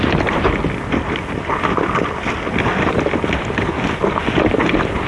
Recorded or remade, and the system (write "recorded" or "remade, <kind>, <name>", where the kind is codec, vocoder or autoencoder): recorded